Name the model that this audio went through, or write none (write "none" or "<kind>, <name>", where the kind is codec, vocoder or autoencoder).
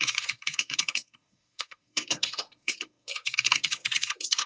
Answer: codec, SNAC